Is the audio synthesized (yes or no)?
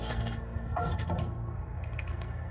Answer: yes